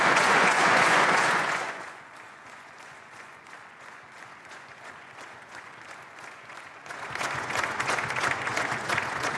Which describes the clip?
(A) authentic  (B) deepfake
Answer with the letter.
B